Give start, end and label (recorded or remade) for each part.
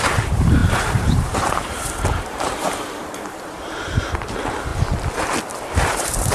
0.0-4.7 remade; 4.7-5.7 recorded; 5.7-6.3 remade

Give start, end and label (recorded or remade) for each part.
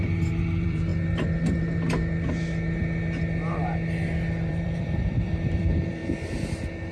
0.0-0.9 remade; 0.9-4.5 recorded; 4.5-6.0 remade; 6.0-6.9 recorded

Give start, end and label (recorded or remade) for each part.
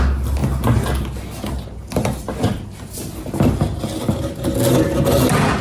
0.0-5.6 recorded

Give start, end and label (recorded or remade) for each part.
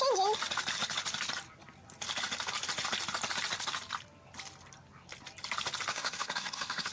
0.0-5.9 recorded; 5.9-6.9 remade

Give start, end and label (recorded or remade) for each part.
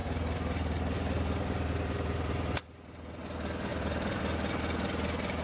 0.0-3.7 recorded; 3.7-4.2 remade; 4.2-5.4 recorded